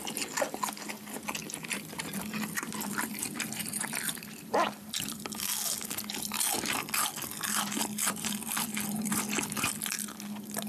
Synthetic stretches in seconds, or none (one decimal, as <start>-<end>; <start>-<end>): 1.4-5.5; 7.8-9.1